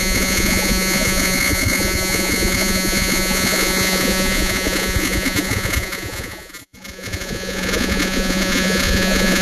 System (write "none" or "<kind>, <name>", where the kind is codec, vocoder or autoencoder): vocoder, Vocos